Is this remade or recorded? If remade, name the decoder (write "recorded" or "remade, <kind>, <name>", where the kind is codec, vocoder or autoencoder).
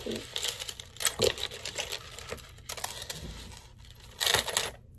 recorded